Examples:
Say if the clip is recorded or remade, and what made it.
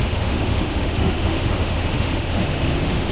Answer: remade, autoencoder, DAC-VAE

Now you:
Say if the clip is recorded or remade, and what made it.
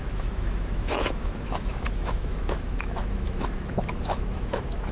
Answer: remade, autoencoder, DAC-VAE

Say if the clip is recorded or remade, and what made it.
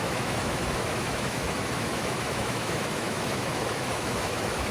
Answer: remade, autoencoder, DAC-VAE